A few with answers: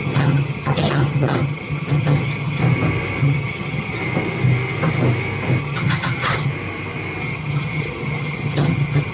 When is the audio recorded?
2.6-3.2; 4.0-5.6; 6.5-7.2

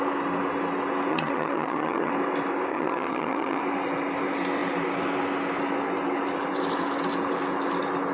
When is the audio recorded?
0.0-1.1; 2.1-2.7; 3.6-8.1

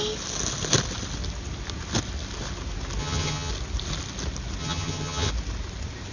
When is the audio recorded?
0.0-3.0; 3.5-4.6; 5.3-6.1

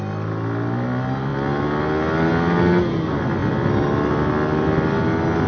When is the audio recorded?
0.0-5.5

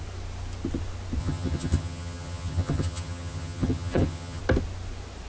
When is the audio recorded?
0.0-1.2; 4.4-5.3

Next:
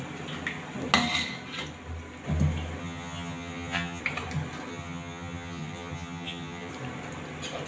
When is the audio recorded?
0.0-2.8; 4.0-4.7; 6.7-7.7